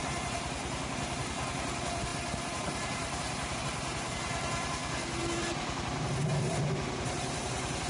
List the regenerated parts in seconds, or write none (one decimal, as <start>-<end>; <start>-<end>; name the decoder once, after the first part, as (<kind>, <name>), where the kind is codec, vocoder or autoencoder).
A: 0.0-4.8 (vocoder, BigVGAN v2); 5.6-7.9